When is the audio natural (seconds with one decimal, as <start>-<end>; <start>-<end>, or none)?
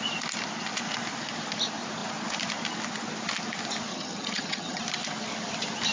0.0-3.9; 4.8-5.9